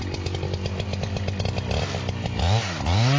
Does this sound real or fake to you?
real